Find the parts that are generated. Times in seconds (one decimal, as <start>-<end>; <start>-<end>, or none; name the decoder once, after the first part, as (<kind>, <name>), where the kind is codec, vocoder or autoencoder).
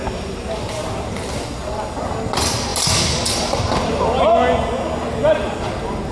none